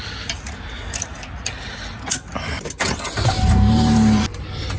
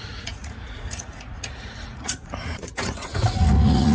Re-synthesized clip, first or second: second